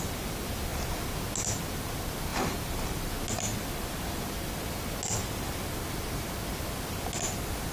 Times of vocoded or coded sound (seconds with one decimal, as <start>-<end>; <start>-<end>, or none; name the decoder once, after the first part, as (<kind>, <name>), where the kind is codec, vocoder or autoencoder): 2.3-3.0 (vocoder, BigVGAN v2)